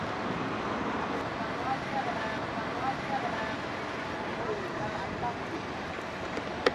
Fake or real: real